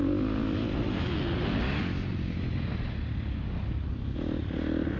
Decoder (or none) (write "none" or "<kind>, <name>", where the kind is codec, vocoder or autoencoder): none